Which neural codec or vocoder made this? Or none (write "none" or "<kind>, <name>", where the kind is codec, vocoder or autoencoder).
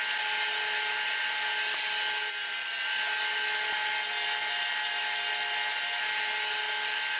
none